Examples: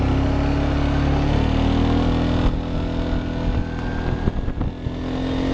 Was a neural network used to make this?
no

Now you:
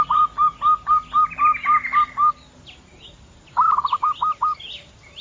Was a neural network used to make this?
no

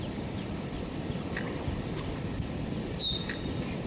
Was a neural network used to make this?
no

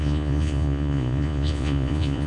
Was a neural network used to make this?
yes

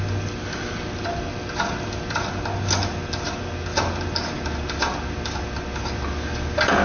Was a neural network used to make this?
no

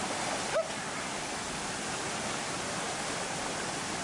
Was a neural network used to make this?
no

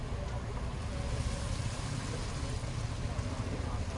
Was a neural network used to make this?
no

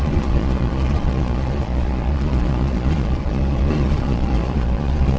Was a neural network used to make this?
yes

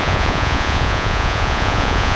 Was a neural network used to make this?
yes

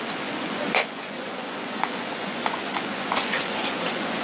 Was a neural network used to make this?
yes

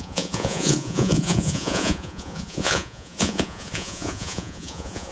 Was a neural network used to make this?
yes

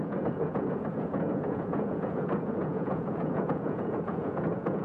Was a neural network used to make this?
yes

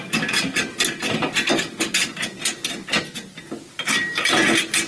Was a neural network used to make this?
no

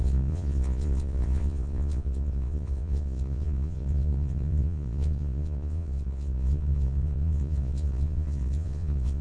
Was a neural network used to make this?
yes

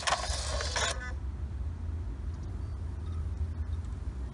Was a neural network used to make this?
no